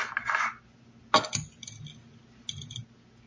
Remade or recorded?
recorded